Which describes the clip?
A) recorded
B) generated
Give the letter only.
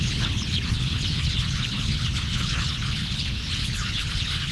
B